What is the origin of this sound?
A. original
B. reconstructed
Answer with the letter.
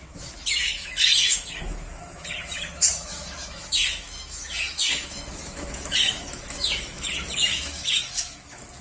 B